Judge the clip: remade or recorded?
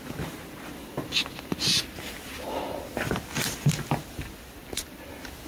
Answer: recorded